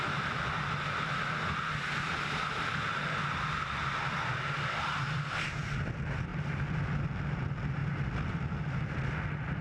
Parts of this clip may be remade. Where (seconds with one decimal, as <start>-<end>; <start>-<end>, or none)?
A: none